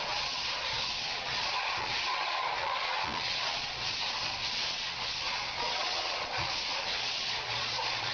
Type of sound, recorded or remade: remade